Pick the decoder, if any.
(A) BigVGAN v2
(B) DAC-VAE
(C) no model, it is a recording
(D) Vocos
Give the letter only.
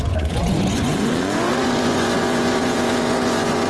D